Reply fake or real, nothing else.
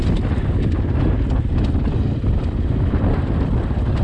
real